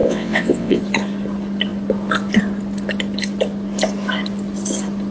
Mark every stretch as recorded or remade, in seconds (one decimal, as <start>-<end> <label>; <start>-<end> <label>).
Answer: 0.0-0.8 remade; 0.8-5.1 recorded